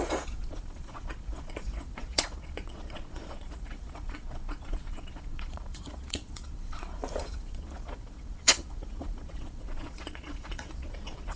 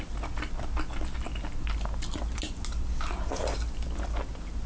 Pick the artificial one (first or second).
first